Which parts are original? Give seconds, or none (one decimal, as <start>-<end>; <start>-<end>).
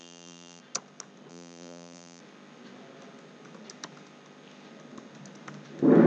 0.6-1.3; 2.2-6.1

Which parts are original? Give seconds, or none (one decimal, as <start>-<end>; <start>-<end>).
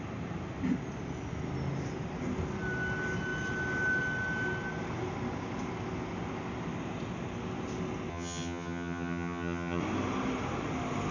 0.0-8.1; 9.8-11.1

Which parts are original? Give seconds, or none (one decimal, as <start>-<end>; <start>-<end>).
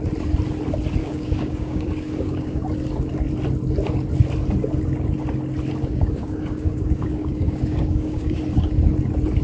0.0-1.0; 2.6-5.8; 8.4-9.4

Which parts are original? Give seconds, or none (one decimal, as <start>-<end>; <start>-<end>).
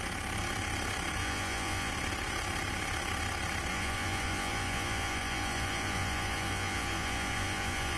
0.0-1.2; 1.9-3.7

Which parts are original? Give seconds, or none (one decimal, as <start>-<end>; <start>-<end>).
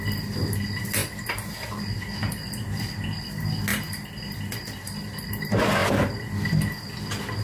0.0-1.0; 1.8-2.2; 2.8-3.7; 5.3-5.8; 6.3-7.4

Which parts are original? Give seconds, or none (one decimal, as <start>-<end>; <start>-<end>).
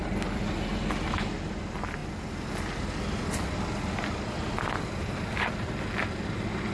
0.0-6.7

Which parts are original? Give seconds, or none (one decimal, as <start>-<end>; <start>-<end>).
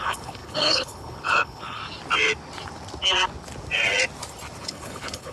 1.8-4.6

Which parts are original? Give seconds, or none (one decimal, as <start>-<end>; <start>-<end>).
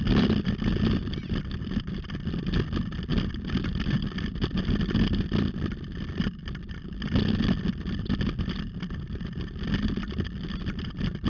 0.0-11.3